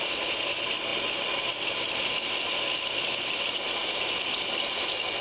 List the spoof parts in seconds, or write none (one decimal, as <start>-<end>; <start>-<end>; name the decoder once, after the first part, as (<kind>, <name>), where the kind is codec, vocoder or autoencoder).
3.8-4.4 (vocoder, BigVGAN v2)

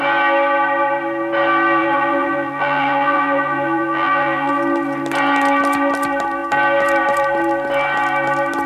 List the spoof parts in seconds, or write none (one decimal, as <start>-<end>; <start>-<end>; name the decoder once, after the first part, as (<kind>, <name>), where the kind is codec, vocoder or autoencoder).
1.8-4.5 (vocoder, BigVGAN v2)